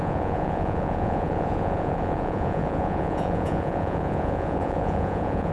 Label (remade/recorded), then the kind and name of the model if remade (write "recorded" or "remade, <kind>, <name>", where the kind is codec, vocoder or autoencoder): remade, vocoder, Vocos